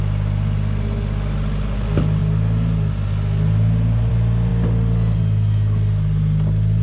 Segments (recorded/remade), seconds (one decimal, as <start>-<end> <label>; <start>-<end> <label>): 0.0-6.8 recorded